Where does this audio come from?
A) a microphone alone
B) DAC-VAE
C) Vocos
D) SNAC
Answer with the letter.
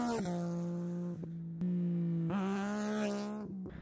A